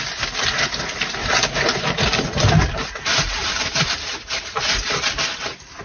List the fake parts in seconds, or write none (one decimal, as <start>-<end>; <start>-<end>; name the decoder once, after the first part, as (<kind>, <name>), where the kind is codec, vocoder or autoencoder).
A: 1.2-4.7 (vocoder, BigVGAN v2)

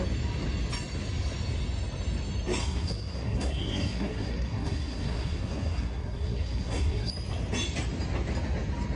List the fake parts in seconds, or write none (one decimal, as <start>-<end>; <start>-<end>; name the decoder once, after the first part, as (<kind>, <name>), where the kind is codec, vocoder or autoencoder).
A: 2.6-7.1 (codec, SNAC)

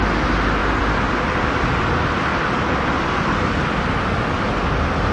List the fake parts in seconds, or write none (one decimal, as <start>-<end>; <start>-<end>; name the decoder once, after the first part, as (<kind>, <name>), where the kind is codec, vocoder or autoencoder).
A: none

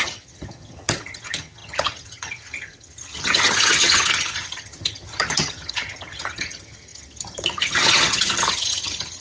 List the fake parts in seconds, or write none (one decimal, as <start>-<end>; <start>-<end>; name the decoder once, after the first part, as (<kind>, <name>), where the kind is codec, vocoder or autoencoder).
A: 0.0-9.2 (vocoder, HiFi-GAN)

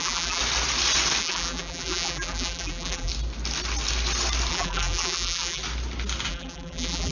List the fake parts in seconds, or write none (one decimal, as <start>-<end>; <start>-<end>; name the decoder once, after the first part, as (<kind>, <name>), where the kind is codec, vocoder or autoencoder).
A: 0.0-0.4 (vocoder, BigVGAN v2); 1.2-3.1; 4.5-5.6; 6.3-7.1

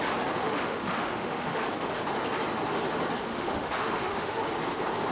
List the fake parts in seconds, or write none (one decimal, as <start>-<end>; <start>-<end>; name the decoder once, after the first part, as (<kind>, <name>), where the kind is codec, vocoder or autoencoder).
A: 0.4-1.6 (autoencoder, DAC-VAE); 3.3-4.4

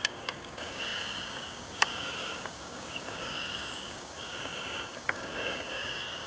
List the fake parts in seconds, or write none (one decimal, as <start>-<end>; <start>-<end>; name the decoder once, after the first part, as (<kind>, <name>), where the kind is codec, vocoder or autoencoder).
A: 0.0-6.3 (codec, DAC)

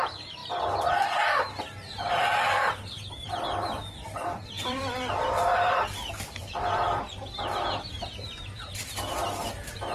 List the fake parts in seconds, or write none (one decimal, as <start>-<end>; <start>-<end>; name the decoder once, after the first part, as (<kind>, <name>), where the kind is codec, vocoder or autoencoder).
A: 0.0-0.4 (vocoder, BigVGAN v2); 2.1-9.9